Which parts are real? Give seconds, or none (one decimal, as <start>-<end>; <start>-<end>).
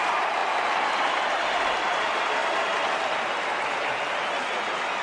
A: 0.0-5.0